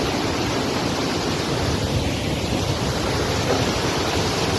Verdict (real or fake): real